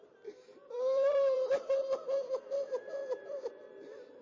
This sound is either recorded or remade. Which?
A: remade